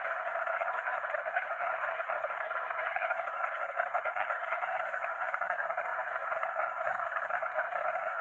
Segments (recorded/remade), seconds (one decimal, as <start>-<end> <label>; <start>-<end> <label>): 0.0-8.2 remade